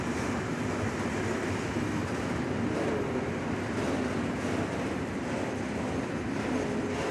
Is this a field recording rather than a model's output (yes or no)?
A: yes